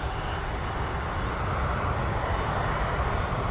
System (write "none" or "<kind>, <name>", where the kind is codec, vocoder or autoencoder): vocoder, BigVGAN v2